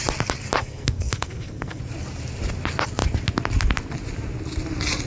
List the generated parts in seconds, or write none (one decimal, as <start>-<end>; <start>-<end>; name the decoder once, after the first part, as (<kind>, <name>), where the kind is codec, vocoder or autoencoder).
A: 0.6-1.8 (codec, SNAC)